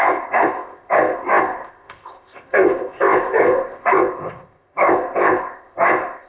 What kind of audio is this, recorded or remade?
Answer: remade